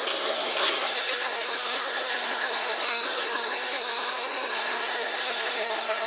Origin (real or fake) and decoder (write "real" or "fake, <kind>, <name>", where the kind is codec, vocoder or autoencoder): fake, codec, SNAC